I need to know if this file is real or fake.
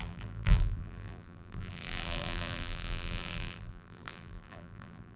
fake